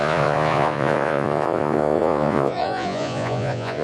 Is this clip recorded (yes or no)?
no